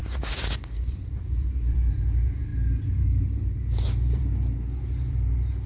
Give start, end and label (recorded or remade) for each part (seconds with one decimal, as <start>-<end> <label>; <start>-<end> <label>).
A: 0.0-2.0 remade; 2.0-2.5 recorded; 2.5-5.7 remade